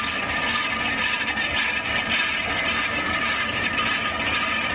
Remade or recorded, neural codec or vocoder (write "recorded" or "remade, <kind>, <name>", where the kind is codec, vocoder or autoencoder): recorded